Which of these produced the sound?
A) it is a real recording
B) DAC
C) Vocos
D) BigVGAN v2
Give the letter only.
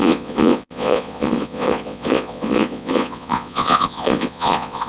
C